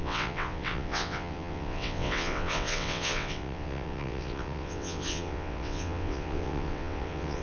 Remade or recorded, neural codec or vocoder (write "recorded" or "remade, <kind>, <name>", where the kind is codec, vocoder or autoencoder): remade, vocoder, WaveNeXt